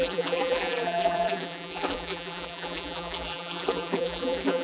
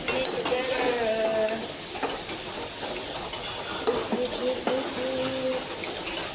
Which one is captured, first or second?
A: second